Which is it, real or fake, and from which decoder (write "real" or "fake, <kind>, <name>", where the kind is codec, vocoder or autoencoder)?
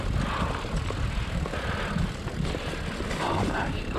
real